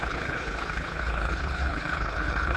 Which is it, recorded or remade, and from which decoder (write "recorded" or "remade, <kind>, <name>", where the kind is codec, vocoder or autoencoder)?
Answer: remade, codec, HILCodec